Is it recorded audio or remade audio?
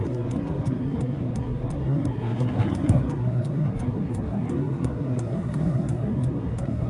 remade